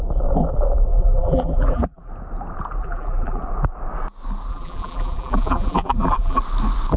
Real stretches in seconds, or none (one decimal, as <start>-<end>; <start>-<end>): 0.0-0.9; 2.1-2.8; 3.4-4.5; 6.4-7.0